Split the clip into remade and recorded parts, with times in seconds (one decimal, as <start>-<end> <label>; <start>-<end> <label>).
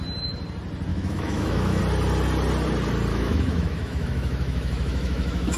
0.0-0.9 recorded; 0.9-1.8 remade; 1.8-3.1 recorded; 3.1-5.6 remade